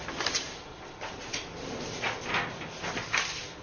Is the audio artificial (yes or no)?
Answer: no